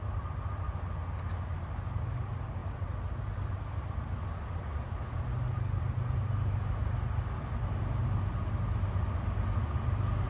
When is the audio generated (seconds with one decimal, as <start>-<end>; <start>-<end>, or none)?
none